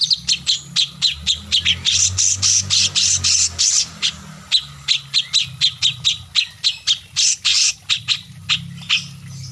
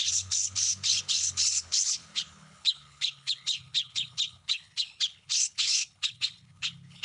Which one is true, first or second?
first